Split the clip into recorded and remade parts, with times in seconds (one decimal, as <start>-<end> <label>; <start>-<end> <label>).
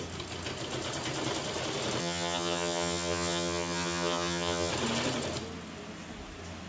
0.0-2.0 recorded; 2.0-4.7 remade; 4.7-6.7 recorded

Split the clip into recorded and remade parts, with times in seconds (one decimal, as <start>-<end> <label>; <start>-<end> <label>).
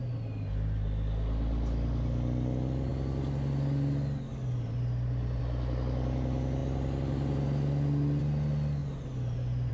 0.0-9.7 recorded